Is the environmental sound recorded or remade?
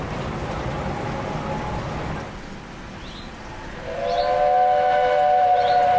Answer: recorded